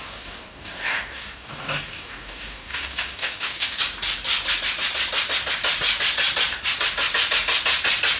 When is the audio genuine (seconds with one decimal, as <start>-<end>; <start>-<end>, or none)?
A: 3.8-8.2